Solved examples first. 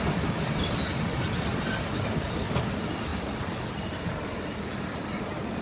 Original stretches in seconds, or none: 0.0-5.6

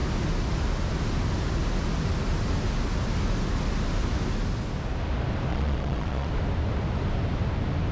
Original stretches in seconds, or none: 0.0-5.5; 6.3-7.9